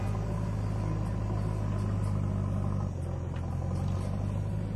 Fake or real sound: real